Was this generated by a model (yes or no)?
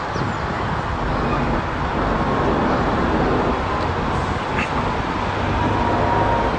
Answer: no